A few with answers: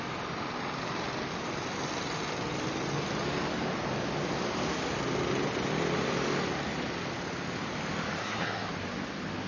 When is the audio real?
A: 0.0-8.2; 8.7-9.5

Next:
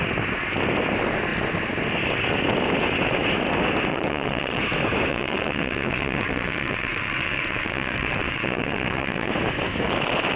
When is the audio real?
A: 0.0-3.9; 4.6-5.1; 9.3-10.4